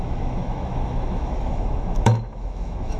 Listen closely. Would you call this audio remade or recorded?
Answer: remade